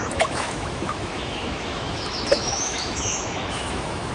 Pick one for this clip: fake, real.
fake